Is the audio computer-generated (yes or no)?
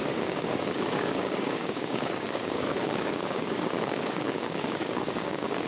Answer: yes